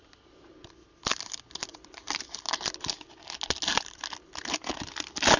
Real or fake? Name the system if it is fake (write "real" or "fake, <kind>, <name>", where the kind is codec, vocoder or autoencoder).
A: real